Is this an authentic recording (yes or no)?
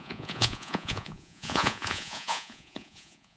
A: no